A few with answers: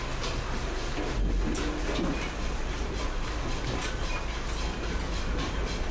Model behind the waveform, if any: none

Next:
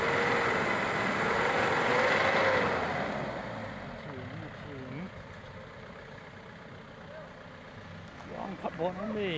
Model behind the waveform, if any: none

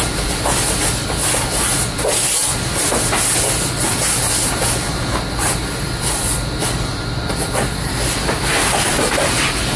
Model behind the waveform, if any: none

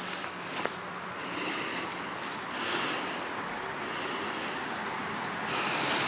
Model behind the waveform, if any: none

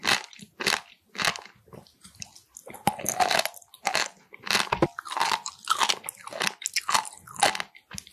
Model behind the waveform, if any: none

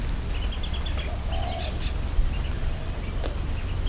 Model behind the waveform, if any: none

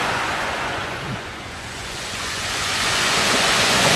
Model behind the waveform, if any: vocoder, Vocos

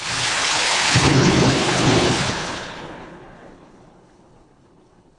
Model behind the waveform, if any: codec, HILCodec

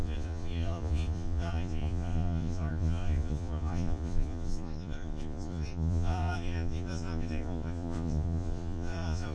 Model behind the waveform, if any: vocoder, Vocos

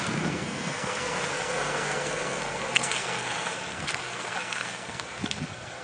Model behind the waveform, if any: codec, SNAC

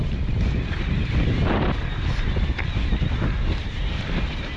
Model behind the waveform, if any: none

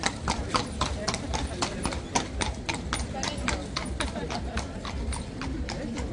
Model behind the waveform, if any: none